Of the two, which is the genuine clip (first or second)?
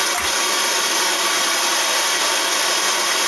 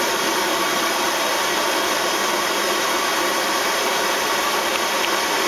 first